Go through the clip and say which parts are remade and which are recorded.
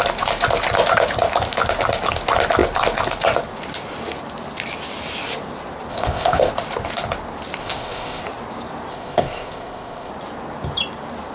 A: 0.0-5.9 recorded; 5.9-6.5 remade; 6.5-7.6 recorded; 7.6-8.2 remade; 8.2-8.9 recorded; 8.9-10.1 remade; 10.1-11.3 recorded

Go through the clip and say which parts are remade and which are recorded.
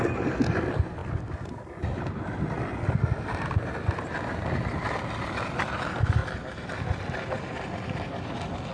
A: 0.0-8.7 recorded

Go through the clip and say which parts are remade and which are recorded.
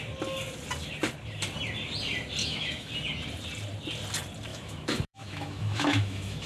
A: 0.0-2.4 recorded; 2.4-2.9 remade; 2.9-4.5 recorded; 4.5-6.5 remade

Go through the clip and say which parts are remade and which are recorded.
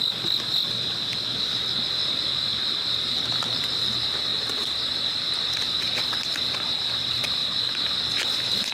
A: 0.0-2.0 recorded; 2.0-3.6 remade; 3.6-8.7 recorded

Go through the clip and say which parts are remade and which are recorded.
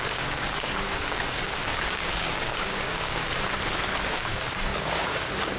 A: 0.0-3.3 remade; 3.3-4.1 recorded; 4.1-5.6 remade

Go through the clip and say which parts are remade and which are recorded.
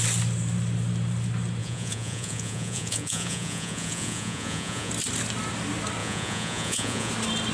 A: 0.0-1.6 recorded; 1.6-4.9 remade; 4.9-6.0 recorded; 6.0-7.1 remade; 7.1-7.5 recorded